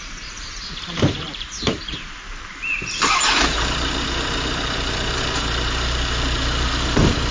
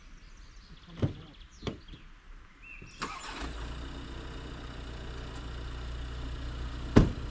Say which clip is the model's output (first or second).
first